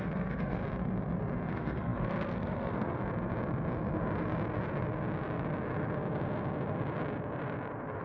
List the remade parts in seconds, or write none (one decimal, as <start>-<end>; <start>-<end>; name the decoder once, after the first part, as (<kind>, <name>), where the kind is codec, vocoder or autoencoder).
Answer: 0.0-0.6 (codec, SNAC); 1.5-3.0